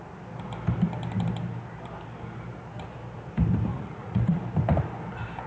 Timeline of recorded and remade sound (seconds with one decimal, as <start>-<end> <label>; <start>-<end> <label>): 0.0-3.7 recorded; 3.7-4.4 remade; 4.4-5.5 recorded